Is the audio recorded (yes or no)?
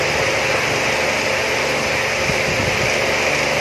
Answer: yes